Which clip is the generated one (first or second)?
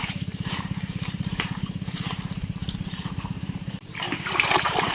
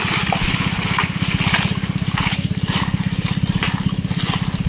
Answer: first